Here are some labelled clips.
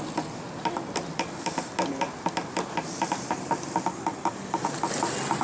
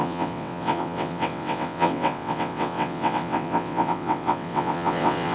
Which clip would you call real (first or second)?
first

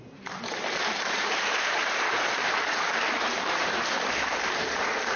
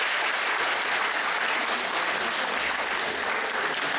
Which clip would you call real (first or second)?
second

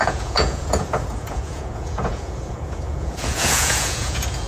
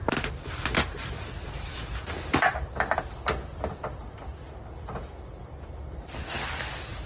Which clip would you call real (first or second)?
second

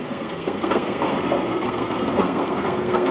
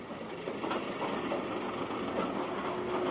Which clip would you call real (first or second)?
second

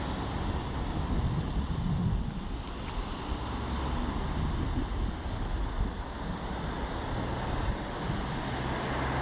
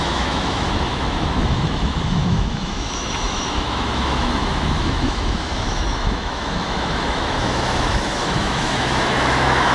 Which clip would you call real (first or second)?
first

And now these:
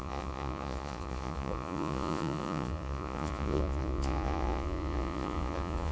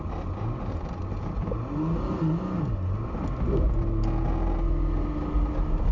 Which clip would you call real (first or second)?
second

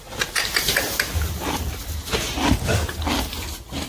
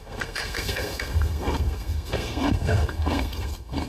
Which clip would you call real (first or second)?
first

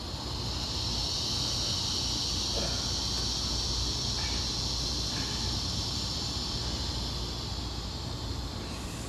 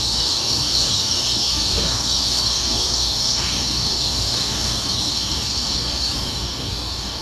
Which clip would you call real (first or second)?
first